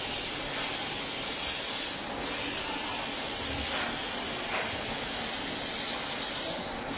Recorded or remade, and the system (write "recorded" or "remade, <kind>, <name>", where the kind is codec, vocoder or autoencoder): recorded